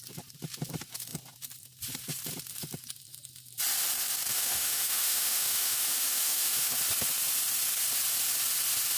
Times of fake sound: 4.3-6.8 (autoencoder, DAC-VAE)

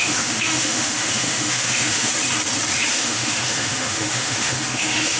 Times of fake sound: 0.0-2.1 (autoencoder, DAC-VAE); 2.9-5.2

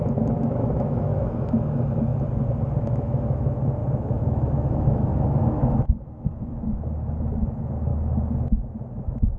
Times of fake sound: 0.0-2.1 (autoencoder, DAC-VAE); 2.8-7.9; 9.0-9.4

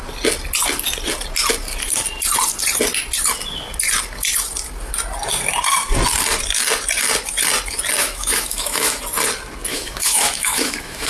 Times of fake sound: 8.0-9.0 (autoencoder, DAC-VAE); 9.7-11.1